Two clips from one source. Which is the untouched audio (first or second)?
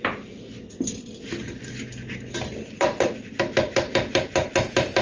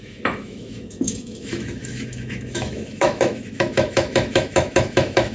first